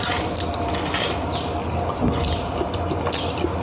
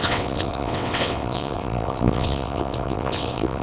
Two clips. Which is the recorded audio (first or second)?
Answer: first